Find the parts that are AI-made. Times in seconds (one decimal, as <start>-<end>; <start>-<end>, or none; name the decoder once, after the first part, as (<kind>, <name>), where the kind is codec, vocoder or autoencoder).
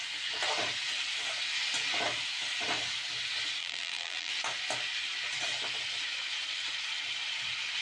3.6-4.3 (vocoder, BigVGAN v2)